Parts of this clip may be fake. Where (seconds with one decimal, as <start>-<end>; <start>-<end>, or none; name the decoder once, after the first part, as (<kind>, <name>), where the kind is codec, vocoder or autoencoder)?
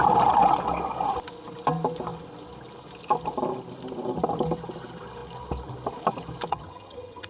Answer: 6.5-7.3 (vocoder, HiFi-GAN)